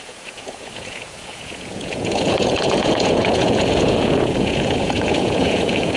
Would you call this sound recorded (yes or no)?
no